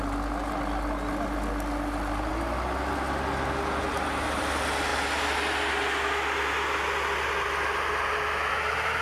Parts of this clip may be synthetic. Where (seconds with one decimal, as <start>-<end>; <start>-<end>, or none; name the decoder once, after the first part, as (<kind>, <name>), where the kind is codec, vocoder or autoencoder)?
none